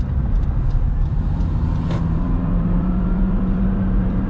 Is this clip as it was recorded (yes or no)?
no